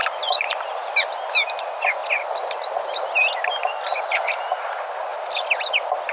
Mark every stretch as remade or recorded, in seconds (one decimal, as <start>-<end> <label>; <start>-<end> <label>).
0.0-6.1 recorded